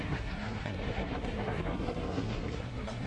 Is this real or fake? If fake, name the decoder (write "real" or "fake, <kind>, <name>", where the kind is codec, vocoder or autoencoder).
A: fake, codec, SNAC